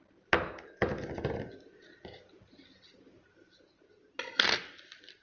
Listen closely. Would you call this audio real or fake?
real